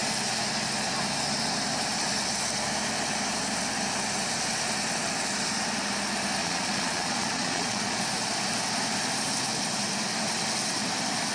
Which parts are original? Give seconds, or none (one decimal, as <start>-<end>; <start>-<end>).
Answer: 0.0-6.4; 8.0-11.3